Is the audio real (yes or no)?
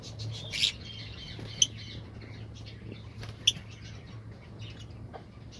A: yes